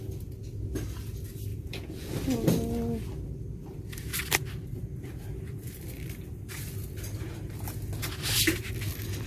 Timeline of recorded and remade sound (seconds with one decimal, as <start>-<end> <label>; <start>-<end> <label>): 0.0-1.5 recorded; 1.5-2.1 remade; 2.1-9.3 recorded